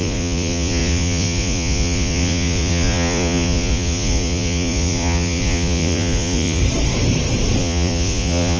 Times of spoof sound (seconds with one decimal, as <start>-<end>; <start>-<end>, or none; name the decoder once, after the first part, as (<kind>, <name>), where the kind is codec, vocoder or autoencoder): 0.0-6.6 (vocoder, Vocos); 7.6-8.6